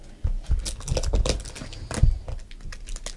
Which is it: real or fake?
real